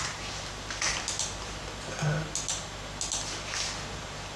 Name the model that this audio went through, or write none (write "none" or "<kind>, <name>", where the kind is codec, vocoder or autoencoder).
none